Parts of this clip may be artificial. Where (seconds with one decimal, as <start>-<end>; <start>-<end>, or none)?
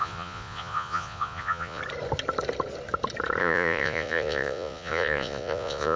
0.0-1.8; 3.4-6.0